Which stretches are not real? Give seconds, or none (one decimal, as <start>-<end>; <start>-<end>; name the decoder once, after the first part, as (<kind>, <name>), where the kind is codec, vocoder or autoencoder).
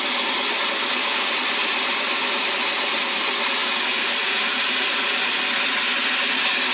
none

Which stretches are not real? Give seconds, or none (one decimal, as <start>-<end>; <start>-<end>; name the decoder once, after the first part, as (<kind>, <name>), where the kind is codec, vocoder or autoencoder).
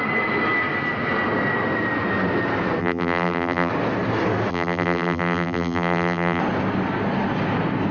2.8-3.7 (vocoder, BigVGAN v2); 4.5-6.4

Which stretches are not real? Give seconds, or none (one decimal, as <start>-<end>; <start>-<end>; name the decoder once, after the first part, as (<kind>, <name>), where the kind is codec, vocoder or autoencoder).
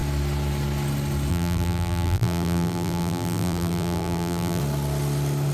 1.3-4.6 (vocoder, BigVGAN v2)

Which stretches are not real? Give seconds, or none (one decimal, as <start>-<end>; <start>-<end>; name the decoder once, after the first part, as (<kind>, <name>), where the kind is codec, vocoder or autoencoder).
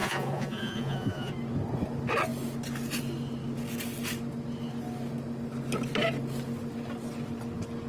0.0-1.3 (vocoder, Vocos)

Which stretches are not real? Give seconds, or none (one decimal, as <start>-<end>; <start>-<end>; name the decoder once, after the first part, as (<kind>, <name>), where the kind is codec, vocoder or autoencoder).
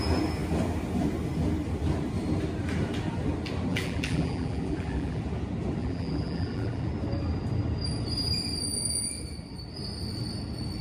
3.7-5.2 (vocoder, BigVGAN v2); 5.8-6.9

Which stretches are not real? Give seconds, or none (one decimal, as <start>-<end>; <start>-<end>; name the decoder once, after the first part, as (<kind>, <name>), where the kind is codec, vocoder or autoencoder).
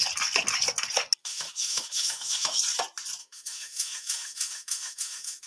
1.2-2.6 (autoencoder, DAC-VAE); 3.2-5.5